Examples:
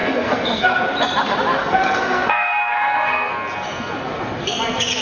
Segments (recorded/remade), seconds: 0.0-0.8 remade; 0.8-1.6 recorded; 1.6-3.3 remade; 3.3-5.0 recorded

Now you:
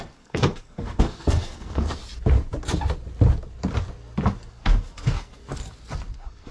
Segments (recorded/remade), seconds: 0.0-2.0 remade; 2.0-4.5 recorded; 4.5-5.4 remade; 5.4-6.1 recorded; 6.1-6.5 remade

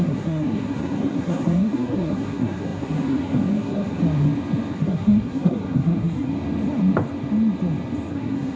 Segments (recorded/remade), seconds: 0.0-4.0 remade; 4.0-4.7 recorded; 4.7-6.3 remade; 6.3-8.1 recorded; 8.1-8.6 remade

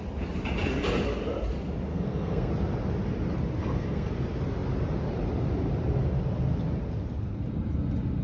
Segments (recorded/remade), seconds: 0.0-1.9 recorded; 1.9-2.5 remade; 2.5-3.6 recorded; 3.6-4.1 remade; 4.1-8.2 recorded